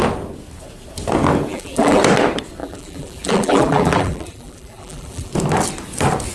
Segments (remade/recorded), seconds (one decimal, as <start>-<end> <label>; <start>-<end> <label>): 0.0-1.5 recorded; 1.5-2.0 remade; 2.0-2.6 recorded; 2.6-5.3 remade; 5.3-6.3 recorded